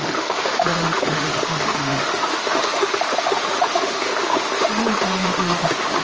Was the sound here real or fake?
fake